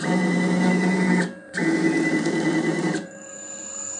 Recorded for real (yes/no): no